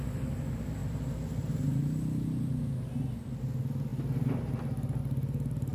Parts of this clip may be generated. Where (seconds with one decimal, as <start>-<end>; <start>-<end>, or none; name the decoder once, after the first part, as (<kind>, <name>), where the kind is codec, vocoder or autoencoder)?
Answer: none